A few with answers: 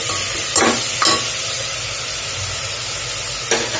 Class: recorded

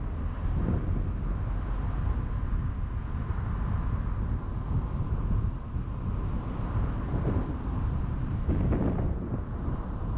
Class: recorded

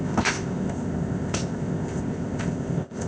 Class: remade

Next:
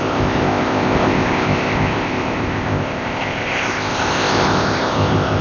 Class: remade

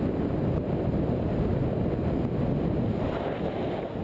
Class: recorded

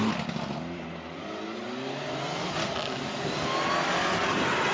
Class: recorded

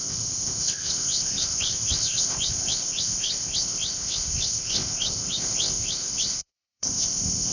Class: remade